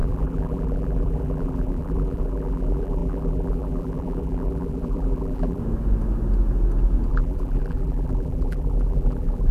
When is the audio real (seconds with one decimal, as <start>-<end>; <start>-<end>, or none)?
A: 5.6-7.1